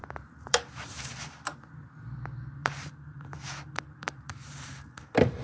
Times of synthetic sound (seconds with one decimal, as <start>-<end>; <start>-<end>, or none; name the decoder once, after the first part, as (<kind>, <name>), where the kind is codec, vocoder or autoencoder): 0.0-1.3 (vocoder, BigVGAN v2); 2.6-5.4